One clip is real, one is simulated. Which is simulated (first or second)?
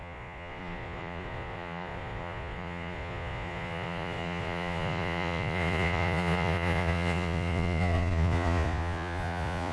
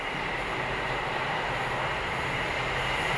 first